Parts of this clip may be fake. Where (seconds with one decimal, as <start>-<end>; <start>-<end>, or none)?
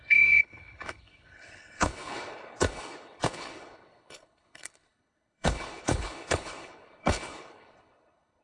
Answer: 0.0-8.4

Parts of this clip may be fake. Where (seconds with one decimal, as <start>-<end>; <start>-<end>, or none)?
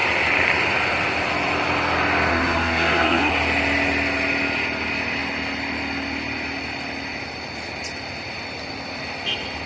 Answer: 2.3-3.3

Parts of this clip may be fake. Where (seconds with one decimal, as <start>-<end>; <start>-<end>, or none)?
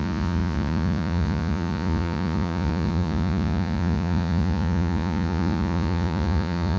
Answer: 0.0-6.8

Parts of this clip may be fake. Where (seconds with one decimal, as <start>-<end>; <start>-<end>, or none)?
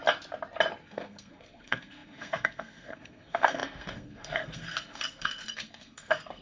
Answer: 0.8-6.4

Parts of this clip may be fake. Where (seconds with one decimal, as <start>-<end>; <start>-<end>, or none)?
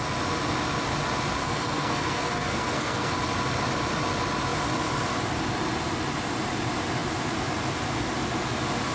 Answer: 1.4-3.1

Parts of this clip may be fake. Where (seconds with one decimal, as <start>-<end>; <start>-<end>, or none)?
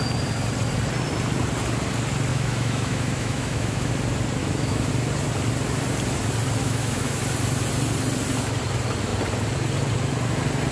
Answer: 2.3-3.9; 4.4-4.9; 6.6-7.2